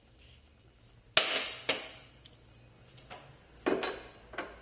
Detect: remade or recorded recorded